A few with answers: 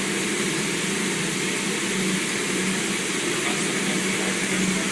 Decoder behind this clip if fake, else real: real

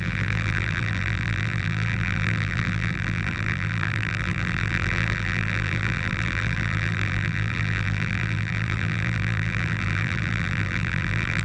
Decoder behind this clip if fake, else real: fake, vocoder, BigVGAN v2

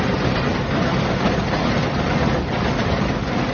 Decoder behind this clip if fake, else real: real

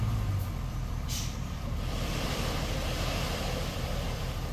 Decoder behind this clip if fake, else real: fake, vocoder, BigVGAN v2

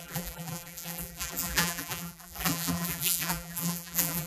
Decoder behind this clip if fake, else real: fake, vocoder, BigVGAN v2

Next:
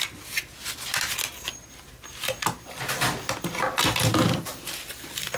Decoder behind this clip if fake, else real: real